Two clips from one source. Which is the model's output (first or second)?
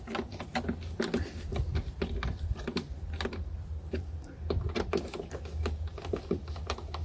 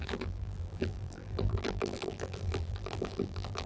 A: second